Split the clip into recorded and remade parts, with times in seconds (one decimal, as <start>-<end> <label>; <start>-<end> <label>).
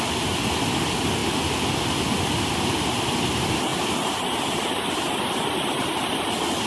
0.0-6.7 recorded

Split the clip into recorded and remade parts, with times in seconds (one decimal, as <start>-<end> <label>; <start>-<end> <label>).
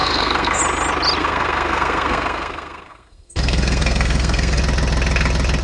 0.0-0.6 remade; 0.6-1.2 recorded; 1.2-4.6 remade; 4.6-5.6 recorded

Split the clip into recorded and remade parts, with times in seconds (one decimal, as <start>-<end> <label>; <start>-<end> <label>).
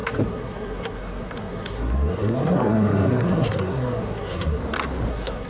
0.0-4.6 remade; 4.6-5.1 recorded; 5.1-5.5 remade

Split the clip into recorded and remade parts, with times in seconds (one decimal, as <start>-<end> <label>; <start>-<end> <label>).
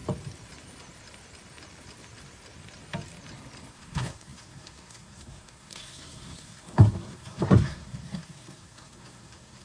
0.0-3.7 recorded; 3.7-9.6 remade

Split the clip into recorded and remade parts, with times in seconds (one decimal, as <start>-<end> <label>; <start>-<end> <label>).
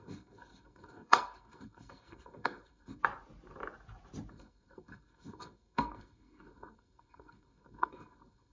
0.0-3.0 remade; 3.0-4.3 recorded; 4.3-8.5 remade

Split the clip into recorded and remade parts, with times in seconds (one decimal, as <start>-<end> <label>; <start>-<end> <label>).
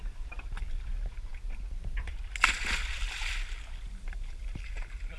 0.0-5.2 recorded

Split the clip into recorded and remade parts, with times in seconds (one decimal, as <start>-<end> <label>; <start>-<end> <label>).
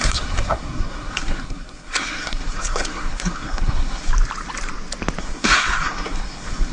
0.0-4.1 remade; 4.1-5.2 recorded; 5.2-6.7 remade